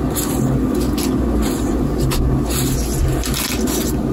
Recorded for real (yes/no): yes